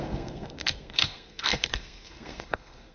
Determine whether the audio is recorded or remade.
remade